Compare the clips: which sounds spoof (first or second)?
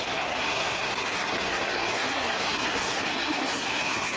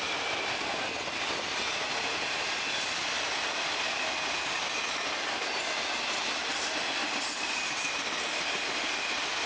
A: first